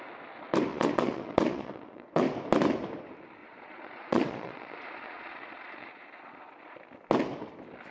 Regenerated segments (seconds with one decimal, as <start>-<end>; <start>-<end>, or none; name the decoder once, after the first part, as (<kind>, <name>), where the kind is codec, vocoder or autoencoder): 0.7-2.2 (vocoder, Vocos); 3.4-6.8